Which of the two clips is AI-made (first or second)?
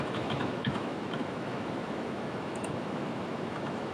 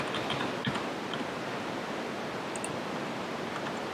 first